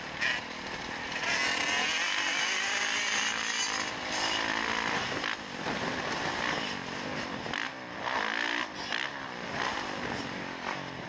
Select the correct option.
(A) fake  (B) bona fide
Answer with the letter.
A